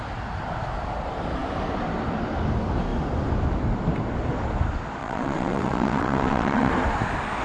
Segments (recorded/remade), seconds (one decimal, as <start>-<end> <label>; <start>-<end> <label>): 0.0-5.0 recorded; 5.0-6.7 remade; 6.7-7.4 recorded